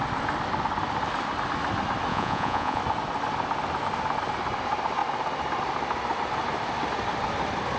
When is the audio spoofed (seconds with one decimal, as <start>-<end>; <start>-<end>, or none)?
2.1-2.8

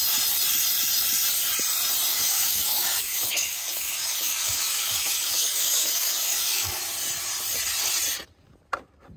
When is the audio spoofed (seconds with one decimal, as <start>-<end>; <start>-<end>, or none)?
2.1-6.8

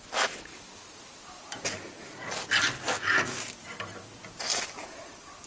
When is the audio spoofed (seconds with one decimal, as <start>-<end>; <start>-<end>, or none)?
none

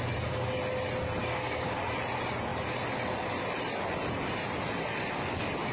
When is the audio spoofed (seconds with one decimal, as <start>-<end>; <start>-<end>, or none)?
1.2-1.8

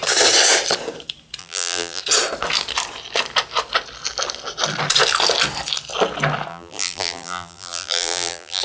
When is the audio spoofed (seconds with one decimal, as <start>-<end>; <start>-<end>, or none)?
1.4-2.0; 6.5-8.6

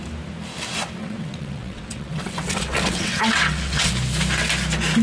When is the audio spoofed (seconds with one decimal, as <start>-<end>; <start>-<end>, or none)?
1.0-3.9